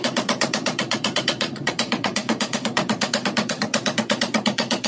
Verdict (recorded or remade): remade